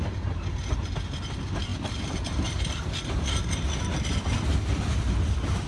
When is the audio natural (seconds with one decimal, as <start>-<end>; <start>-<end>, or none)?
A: 0.0-5.7